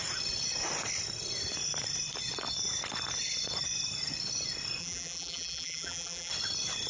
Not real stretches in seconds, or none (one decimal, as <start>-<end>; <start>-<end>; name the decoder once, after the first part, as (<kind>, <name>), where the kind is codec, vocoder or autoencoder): 4.8-6.3 (vocoder, BigVGAN v2)